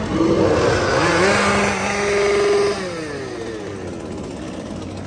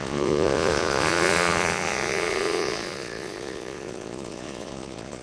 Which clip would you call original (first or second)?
first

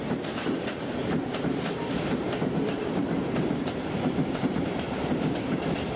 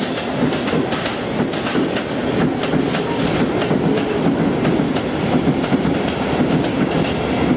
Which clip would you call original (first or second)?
second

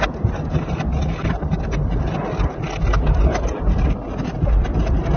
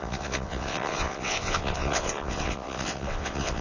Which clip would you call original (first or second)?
first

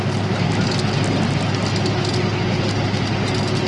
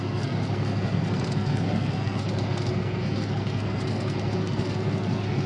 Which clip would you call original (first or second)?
first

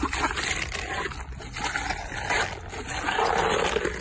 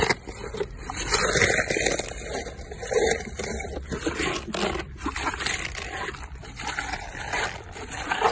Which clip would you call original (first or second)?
first